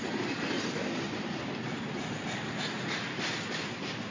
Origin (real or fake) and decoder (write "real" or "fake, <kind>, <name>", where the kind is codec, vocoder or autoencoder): real